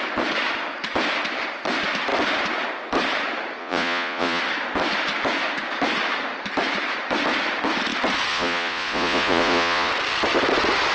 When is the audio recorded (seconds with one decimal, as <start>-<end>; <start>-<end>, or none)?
0.0-3.6; 4.4-8.3; 9.9-10.9